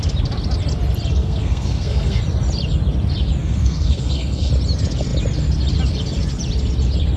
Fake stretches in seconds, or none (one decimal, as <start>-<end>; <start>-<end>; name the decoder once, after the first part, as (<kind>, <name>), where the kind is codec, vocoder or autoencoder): 1.2-2.2 (codec, SNAC); 3.4-4.5